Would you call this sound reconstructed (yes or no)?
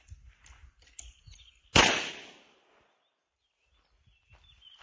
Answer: no